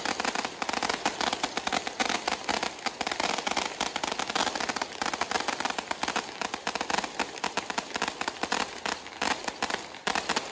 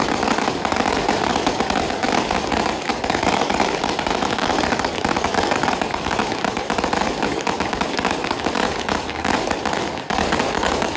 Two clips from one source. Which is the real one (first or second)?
first